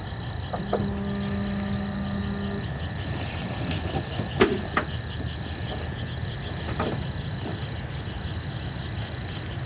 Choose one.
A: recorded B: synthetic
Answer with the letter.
A